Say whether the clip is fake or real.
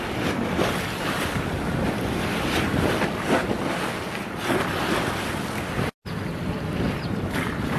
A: real